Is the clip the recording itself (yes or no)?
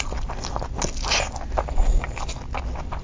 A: yes